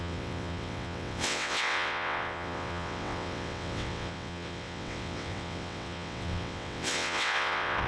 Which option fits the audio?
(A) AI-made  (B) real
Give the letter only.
A